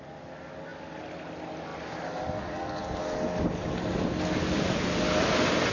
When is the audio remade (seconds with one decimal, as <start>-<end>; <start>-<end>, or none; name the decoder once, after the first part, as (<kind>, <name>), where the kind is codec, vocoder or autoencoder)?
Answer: none

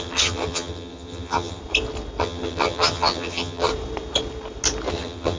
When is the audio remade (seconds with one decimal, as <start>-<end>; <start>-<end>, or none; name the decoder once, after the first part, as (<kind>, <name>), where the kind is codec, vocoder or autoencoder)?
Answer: 0.0-1.6 (vocoder, HiFi-GAN); 2.2-3.7; 4.9-5.4

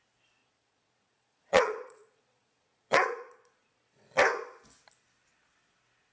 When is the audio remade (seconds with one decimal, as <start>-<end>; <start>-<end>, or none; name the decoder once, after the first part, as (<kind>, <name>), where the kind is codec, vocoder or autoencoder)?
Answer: 0.4-4.1 (vocoder, Vocos)